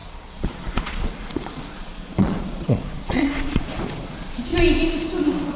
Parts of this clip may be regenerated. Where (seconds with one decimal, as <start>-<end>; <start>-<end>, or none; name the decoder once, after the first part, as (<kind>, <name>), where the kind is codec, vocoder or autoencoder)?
0.0-4.5 (vocoder, Vocos)

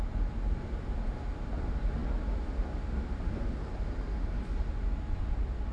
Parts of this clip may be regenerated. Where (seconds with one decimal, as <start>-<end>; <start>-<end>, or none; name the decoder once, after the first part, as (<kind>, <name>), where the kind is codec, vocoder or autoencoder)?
none